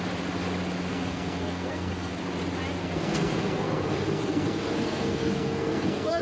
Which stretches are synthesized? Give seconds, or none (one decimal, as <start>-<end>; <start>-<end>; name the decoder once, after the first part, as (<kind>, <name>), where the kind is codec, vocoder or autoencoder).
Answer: 0.9-2.1 (codec, SNAC); 2.8-6.2